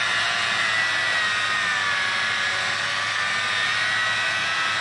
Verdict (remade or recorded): recorded